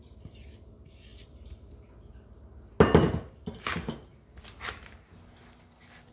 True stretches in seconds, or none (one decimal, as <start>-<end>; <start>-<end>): 0.0-6.1